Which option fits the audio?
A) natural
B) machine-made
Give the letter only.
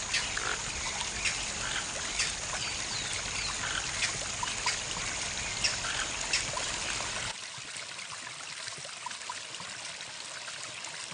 A